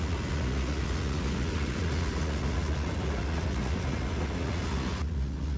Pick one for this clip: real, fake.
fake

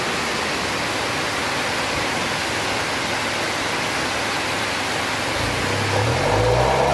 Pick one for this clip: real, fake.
real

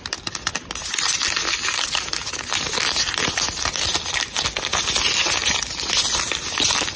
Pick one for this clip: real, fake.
real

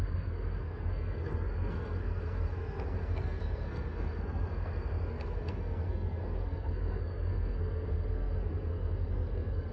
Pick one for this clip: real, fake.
fake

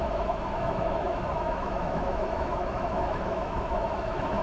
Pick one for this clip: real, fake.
fake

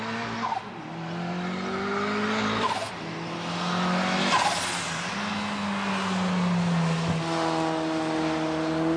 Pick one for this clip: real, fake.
real